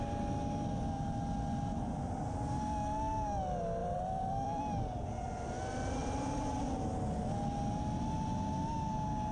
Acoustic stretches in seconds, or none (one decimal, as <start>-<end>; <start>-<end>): 0.0-3.8; 4.6-6.0; 6.5-9.3